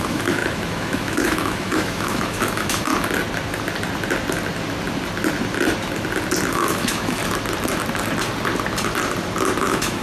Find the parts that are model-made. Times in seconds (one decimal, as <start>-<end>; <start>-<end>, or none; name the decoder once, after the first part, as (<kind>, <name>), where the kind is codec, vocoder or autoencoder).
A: 0.0-2.9 (autoencoder, DAC-VAE); 6.5-7.2; 9.6-10.0